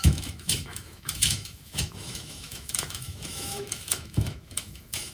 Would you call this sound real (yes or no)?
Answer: no